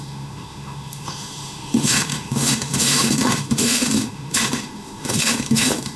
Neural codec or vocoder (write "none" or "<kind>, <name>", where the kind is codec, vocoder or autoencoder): autoencoder, DAC-VAE